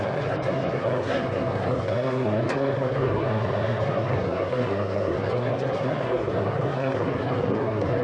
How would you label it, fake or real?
fake